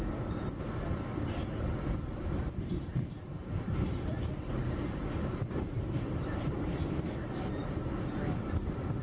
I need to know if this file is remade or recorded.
remade